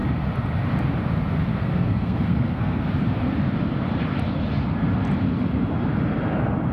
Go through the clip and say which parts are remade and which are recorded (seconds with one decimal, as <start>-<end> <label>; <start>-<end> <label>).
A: 0.0-1.5 recorded; 1.5-2.8 remade; 2.8-6.7 recorded